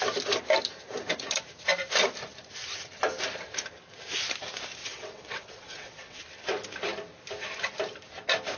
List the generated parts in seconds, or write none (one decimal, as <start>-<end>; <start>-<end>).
4.8-6.2